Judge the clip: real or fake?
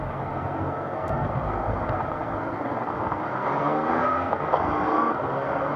fake